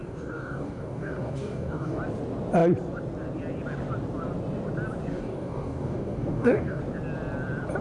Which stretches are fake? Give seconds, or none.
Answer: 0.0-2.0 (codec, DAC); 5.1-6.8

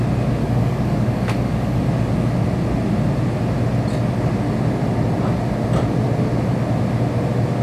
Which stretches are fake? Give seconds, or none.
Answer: 0.4-1.9 (codec, DAC)

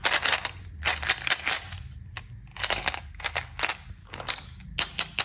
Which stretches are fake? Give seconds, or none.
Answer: 2.5-3.6 (codec, DAC); 4.0-4.6